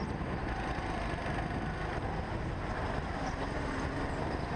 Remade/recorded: recorded